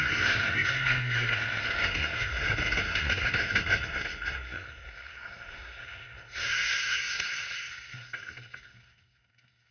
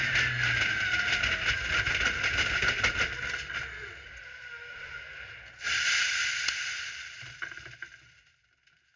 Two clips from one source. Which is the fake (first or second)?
first